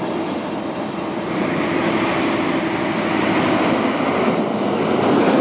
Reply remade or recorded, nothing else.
recorded